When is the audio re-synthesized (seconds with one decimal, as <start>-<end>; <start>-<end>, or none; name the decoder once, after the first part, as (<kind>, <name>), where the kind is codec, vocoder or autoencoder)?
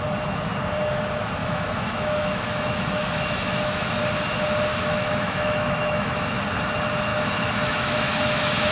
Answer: 1.4-4.0 (autoencoder, DAC-VAE); 4.7-6.4; 7.1-8.7